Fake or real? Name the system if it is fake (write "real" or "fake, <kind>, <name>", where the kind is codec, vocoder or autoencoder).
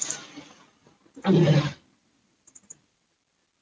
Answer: fake, vocoder, BigVGAN v2